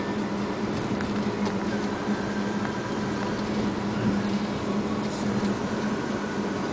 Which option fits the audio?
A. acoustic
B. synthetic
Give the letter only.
A